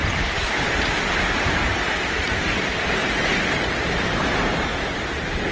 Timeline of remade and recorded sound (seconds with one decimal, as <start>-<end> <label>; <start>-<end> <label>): 0.0-4.7 remade; 4.7-5.5 recorded